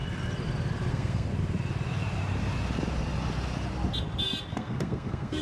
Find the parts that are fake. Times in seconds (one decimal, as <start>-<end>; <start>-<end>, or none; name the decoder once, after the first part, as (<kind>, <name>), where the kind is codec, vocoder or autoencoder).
0.9-1.3 (codec, SNAC); 4.5-5.4

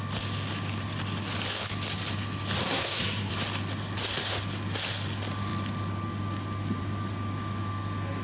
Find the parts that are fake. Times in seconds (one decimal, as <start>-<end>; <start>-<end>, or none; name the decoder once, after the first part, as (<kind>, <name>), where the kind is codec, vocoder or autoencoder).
2.6-3.3 (codec, SNAC)

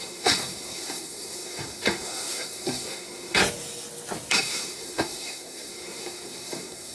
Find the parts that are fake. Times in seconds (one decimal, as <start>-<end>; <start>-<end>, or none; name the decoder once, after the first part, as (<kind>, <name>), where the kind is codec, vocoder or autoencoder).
0.0-3.4 (codec, SNAC); 4.3-6.9

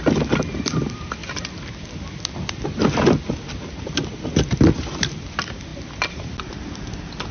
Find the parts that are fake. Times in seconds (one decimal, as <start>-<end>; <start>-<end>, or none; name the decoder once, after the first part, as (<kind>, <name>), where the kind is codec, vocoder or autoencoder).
none

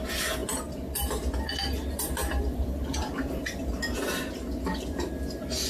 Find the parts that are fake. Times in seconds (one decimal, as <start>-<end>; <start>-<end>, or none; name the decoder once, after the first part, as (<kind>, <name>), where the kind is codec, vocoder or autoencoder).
none

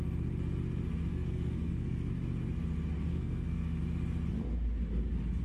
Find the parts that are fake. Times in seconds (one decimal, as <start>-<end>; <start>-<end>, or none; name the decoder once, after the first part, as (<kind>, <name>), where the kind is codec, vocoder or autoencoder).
1.1-2.1 (codec, SNAC); 3.1-3.8

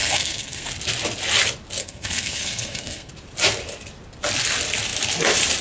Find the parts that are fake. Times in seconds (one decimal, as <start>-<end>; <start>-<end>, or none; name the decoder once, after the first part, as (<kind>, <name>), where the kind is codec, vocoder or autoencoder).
0.0-0.7 (codec, SNAC); 1.8-3.1